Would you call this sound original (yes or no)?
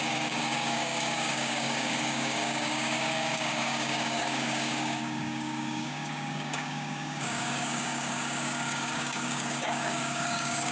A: no